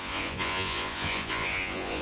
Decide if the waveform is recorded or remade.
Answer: remade